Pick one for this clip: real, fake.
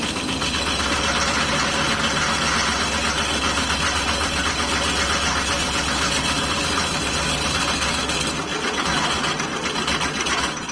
real